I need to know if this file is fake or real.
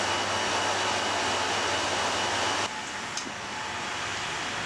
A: real